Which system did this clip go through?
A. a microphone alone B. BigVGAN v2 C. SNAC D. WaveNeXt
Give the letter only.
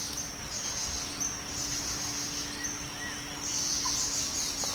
A